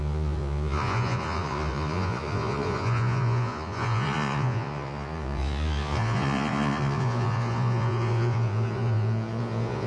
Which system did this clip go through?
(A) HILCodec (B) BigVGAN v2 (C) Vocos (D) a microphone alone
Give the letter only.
C